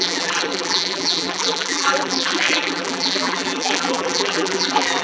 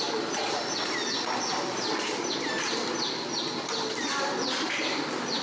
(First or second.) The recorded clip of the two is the second